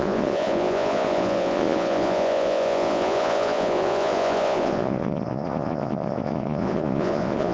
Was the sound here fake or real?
fake